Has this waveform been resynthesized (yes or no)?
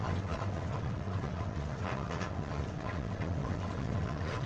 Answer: yes